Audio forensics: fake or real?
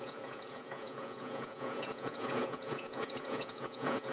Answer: fake